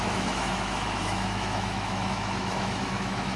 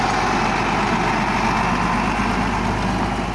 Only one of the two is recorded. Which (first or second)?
second